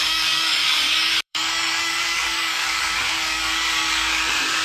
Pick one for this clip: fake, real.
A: fake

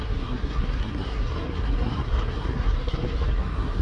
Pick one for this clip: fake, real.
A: fake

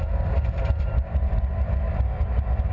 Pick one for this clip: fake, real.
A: fake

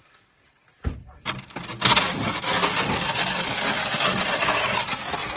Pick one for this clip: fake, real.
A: real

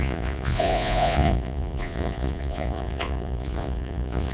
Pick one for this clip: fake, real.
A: fake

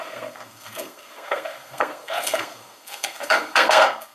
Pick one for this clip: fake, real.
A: fake